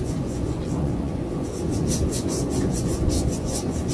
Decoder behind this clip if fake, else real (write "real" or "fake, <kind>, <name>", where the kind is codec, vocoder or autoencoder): fake, vocoder, Vocos